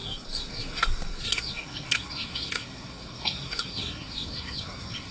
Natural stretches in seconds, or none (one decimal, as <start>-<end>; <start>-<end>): none